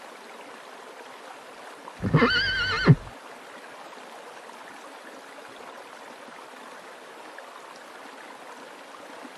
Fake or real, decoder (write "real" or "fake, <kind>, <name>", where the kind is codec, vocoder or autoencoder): real